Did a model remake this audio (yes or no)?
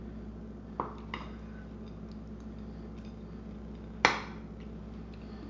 no